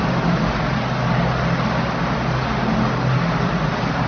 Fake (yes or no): no